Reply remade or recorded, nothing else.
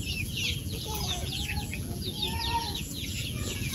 remade